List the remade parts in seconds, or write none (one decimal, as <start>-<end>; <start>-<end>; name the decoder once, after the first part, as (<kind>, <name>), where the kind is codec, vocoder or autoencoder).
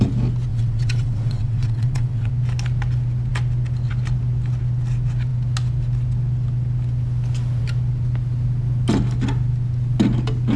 0.5-2.3 (vocoder, WaveNeXt)